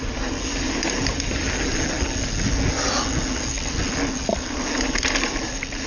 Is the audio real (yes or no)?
yes